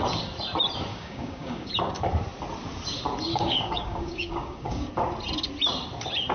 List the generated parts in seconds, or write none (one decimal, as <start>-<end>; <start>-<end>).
0.9-1.7; 3.3-4.9